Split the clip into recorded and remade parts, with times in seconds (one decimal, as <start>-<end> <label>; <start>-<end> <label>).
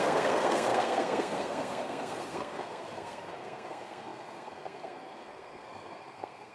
0.0-6.5 remade